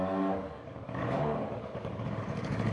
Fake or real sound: fake